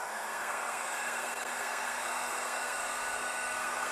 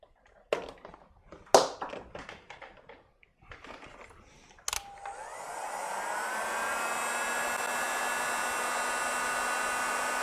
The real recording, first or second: second